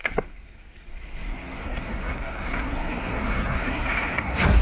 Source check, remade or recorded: remade